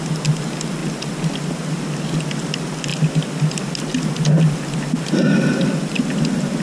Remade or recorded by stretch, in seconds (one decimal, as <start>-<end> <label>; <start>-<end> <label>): 0.0-2.9 recorded; 2.9-3.5 remade; 3.5-6.6 recorded